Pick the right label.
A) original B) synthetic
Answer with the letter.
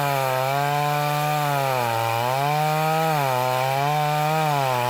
A